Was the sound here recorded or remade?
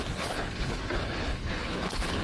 remade